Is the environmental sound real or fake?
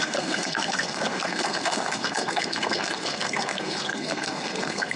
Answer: fake